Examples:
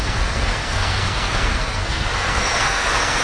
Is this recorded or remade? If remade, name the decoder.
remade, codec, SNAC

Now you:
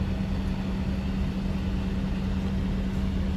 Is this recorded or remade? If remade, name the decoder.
recorded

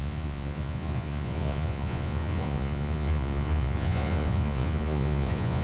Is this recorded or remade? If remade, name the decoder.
remade, vocoder, Vocos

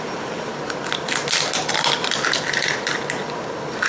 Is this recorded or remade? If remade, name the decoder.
recorded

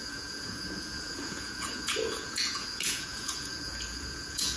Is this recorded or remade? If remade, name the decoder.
remade, vocoder, Vocos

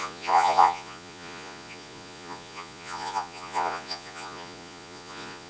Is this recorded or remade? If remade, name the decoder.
remade, vocoder, Vocos